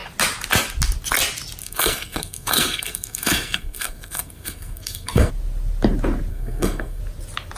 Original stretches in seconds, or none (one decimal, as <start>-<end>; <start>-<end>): 0.0-1.6; 5.3-6.3; 7.0-7.6